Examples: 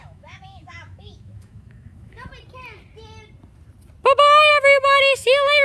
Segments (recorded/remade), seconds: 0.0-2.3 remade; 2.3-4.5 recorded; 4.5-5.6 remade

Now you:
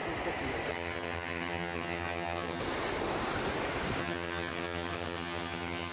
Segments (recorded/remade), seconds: 0.0-0.7 recorded; 0.7-2.6 remade; 2.6-4.0 recorded; 4.0-5.9 remade

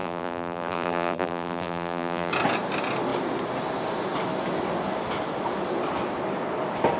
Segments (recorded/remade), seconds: 0.0-2.3 remade; 2.3-7.0 recorded